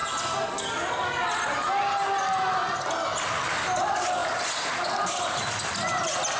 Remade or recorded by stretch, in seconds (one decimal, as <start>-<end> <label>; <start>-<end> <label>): 0.0-6.4 recorded